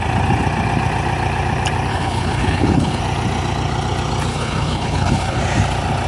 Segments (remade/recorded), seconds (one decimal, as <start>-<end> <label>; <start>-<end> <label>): 0.0-1.9 recorded; 1.9-3.0 remade; 3.0-4.3 recorded; 4.3-5.4 remade; 5.4-6.1 recorded